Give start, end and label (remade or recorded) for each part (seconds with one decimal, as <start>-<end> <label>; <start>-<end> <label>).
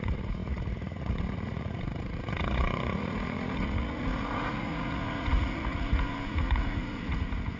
0.0-7.6 remade